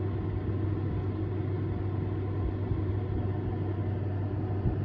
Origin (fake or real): real